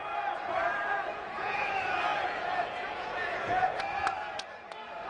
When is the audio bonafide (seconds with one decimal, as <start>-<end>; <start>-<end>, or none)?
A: 0.0-1.1; 1.7-2.1; 3.8-5.1